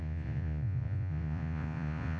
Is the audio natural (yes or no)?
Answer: no